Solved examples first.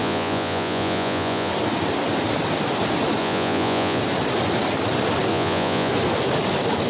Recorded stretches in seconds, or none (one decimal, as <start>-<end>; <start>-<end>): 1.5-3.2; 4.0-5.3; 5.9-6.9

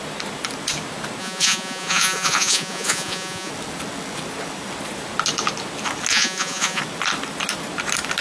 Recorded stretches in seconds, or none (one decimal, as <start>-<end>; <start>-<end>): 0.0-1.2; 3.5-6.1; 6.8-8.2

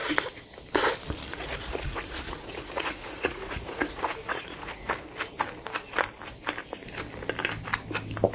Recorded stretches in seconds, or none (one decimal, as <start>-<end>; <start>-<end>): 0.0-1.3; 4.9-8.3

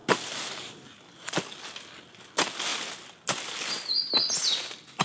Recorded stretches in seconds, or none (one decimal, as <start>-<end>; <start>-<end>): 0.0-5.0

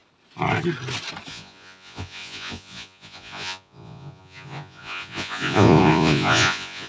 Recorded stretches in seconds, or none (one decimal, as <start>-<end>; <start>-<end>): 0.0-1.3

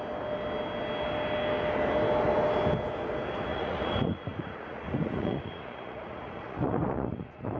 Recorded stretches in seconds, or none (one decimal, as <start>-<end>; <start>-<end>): 0.0-3.5